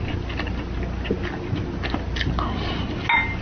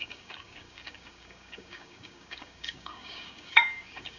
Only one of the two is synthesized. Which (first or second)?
second